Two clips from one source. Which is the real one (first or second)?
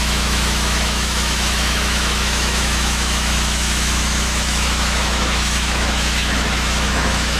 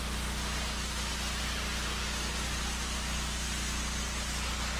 second